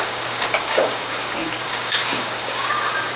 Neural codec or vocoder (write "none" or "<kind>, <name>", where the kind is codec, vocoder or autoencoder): codec, DAC